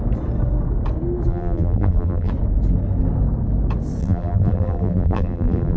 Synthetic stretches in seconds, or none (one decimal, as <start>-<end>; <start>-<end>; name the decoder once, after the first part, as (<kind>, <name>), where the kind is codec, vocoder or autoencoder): 1.3-2.3 (vocoder, BigVGAN v2); 4.0-5.8